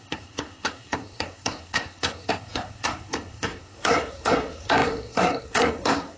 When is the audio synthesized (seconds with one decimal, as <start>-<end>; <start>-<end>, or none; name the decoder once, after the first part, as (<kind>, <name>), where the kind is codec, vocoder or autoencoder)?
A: 0.0-6.2 (codec, SNAC)